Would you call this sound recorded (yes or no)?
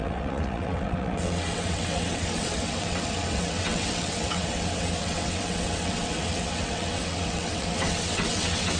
no